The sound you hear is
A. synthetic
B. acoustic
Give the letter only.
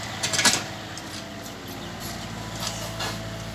B